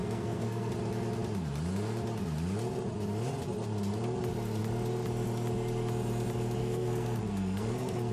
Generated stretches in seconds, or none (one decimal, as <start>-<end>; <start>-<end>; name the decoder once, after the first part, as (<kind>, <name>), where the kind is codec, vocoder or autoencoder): 0.0-0.7 (codec, SNAC); 6.6-8.1